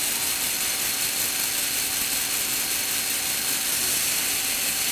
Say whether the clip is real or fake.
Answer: real